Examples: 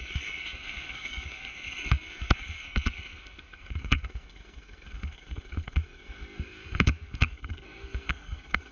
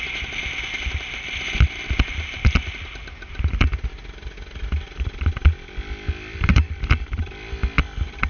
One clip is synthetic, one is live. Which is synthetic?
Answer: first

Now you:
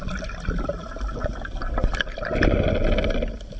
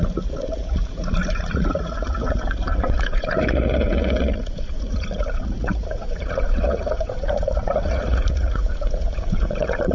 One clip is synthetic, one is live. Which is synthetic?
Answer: second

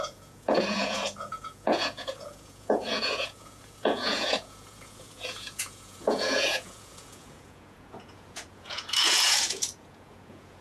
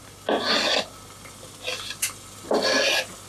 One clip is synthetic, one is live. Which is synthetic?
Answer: first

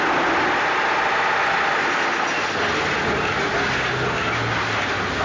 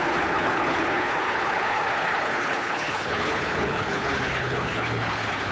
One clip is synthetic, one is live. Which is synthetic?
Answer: second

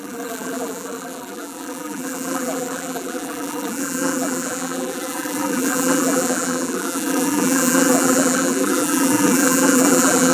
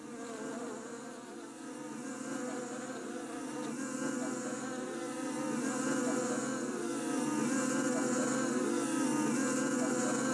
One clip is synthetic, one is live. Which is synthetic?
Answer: first